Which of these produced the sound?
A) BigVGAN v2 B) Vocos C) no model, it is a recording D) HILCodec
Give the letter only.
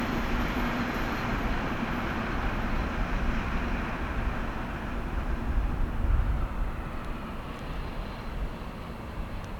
C